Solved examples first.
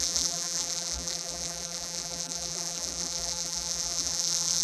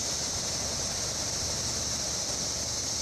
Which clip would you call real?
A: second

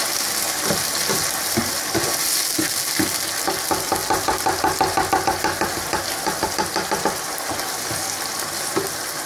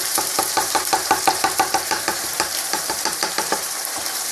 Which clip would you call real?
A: first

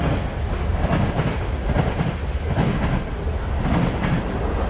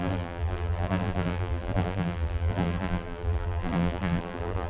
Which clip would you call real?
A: first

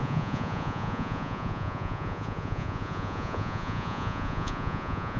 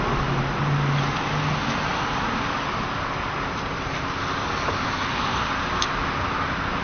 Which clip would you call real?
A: second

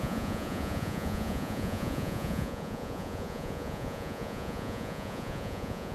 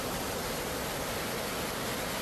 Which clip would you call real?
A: second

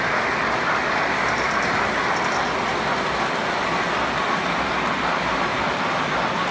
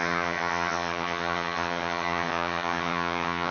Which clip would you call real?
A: first